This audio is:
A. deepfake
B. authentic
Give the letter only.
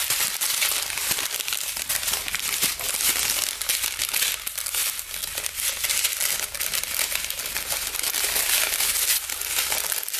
B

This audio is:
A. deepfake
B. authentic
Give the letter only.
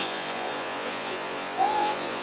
A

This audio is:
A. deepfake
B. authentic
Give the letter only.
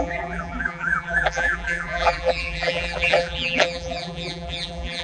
A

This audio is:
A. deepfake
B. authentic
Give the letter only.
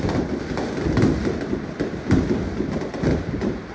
B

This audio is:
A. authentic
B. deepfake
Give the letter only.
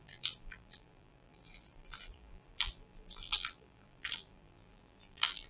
B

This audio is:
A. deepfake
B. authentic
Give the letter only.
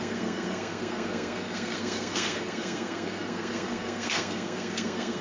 A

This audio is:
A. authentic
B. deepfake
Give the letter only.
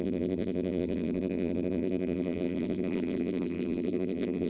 B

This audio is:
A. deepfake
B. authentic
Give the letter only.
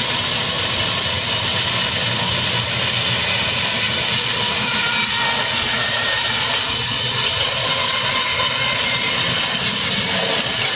B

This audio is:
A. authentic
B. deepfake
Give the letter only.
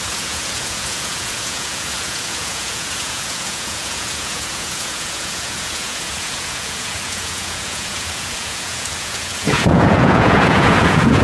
B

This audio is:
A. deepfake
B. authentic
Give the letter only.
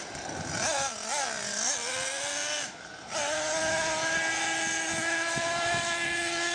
B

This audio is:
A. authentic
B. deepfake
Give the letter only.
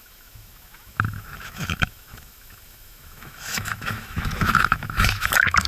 B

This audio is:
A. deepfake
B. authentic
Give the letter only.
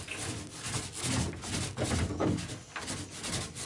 B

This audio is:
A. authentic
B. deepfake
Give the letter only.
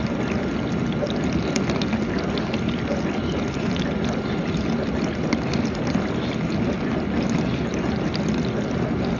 A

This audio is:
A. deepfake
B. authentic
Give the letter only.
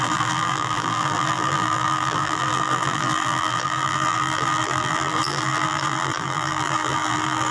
A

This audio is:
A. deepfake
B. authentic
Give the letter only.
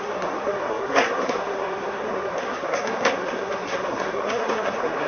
A